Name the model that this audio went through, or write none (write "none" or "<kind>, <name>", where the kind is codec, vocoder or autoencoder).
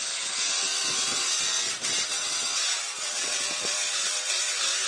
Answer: vocoder, WaveNeXt